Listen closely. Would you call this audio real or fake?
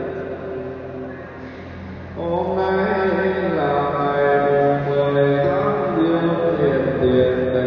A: real